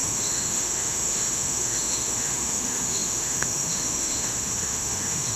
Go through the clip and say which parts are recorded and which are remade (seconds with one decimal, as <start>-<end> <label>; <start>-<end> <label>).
0.0-5.4 remade